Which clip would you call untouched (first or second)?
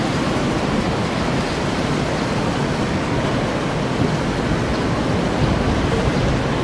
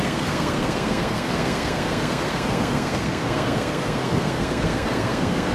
first